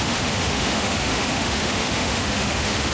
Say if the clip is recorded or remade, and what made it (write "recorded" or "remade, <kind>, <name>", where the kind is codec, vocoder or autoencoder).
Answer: remade, autoencoder, DAC-VAE